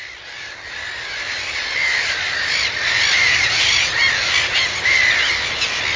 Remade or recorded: recorded